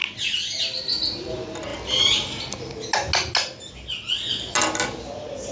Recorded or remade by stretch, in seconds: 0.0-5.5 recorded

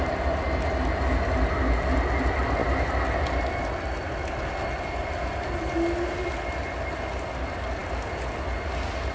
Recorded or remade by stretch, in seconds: 0.0-9.1 recorded

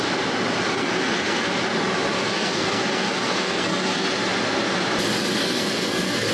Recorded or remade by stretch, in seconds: 0.0-0.7 recorded; 0.7-1.5 remade; 1.5-2.2 recorded; 2.2-4.1 remade; 4.1-5.4 recorded; 5.4-6.3 remade